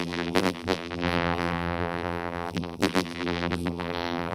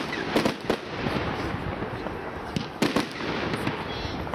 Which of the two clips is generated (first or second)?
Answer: first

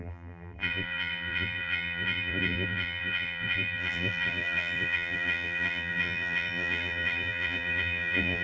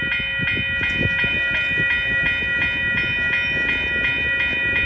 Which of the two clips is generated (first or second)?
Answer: first